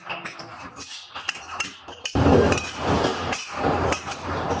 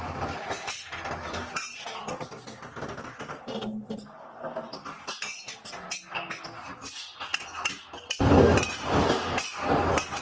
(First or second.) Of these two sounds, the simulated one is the first